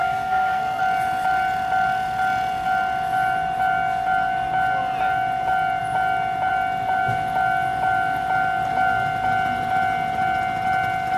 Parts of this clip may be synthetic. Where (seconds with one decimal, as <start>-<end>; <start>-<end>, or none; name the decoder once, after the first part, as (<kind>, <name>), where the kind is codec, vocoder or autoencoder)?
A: 0.0-0.8 (codec, SNAC)